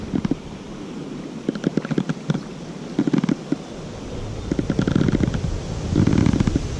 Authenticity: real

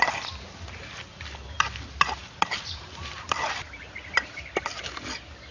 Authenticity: real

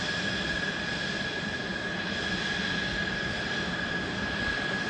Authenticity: real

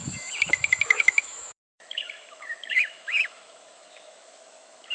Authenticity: fake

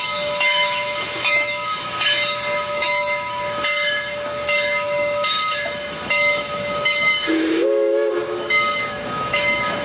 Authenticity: fake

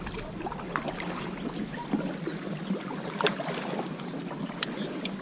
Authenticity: real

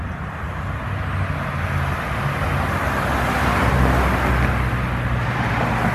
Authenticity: real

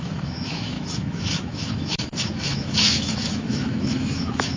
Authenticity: fake